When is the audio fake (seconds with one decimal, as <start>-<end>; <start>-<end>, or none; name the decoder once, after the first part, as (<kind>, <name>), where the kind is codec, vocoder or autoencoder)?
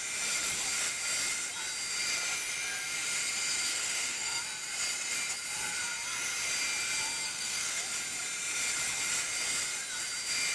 3.7-4.4 (codec, SNAC); 7.2-7.8